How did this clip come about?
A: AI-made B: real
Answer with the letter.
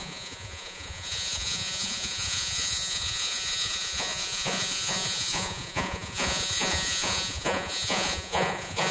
A